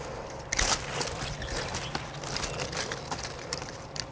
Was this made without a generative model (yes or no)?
yes